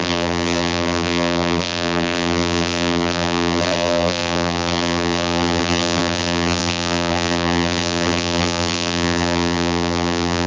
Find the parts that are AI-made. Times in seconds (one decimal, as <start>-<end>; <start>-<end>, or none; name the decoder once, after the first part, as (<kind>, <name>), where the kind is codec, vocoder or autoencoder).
0.0-10.5 (vocoder, BigVGAN v2)